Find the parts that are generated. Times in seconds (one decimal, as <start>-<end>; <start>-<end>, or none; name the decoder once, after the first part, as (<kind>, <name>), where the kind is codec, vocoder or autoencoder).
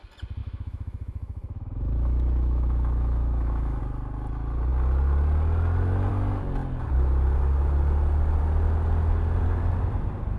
0.4-3.8 (autoencoder, DAC-VAE)